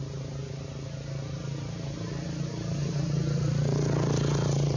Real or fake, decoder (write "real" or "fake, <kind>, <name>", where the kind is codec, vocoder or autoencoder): real